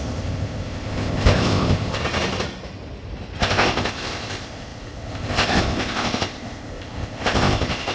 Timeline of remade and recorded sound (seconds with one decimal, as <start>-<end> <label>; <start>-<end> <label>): 0.0-2.0 remade; 2.0-3.4 recorded; 3.4-7.9 remade